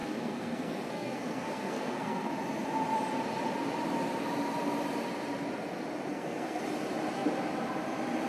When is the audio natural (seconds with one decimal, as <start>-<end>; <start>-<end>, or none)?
2.3-6.1; 6.6-8.3